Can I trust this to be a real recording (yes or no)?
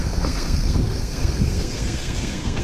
no